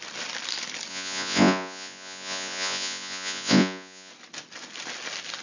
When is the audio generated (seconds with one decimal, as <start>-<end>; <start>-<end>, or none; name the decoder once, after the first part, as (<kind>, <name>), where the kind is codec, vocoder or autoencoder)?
0.9-4.1 (vocoder, Vocos)

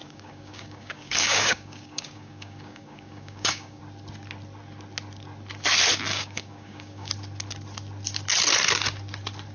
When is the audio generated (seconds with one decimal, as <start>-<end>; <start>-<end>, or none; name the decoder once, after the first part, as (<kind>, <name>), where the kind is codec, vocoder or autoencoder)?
0.0-3.8 (codec, DAC); 6.1-7.1

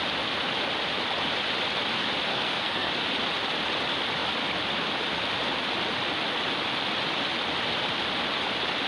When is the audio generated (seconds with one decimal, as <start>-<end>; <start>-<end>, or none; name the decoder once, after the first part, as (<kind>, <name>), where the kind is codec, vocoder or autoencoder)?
2.3-2.9 (codec, SNAC)

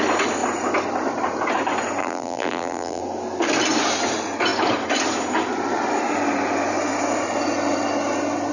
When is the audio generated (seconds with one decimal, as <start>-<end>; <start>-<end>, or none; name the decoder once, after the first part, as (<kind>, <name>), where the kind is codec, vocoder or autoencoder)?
2.0-3.0 (vocoder, BigVGAN v2)

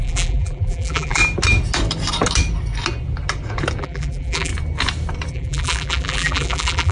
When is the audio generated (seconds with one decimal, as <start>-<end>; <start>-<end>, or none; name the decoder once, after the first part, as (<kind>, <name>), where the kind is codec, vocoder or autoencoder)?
0.0-1.2 (vocoder, BigVGAN v2); 3.8-4.5; 5.3-6.9

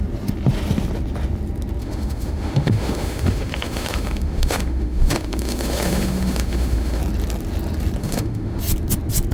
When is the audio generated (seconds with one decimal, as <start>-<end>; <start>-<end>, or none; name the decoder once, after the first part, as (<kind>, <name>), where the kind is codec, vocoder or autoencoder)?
1.8-7.0 (autoencoder, DAC-VAE); 8.0-8.6